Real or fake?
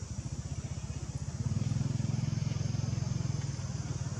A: real